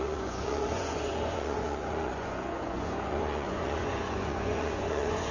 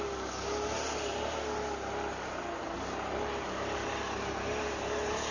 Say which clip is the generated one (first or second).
first